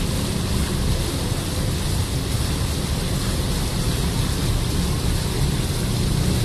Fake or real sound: real